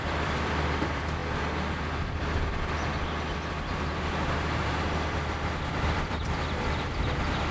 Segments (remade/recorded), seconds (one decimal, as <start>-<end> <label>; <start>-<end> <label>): 0.0-1.2 remade; 1.2-5.7 recorded; 5.7-7.5 remade